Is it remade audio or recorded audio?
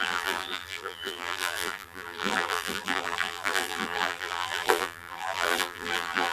remade